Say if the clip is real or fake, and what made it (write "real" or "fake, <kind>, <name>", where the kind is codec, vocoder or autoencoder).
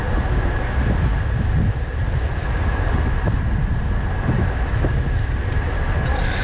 real